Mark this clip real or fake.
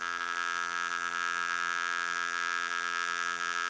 fake